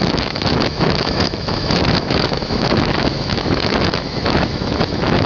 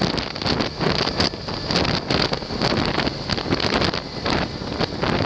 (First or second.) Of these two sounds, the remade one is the first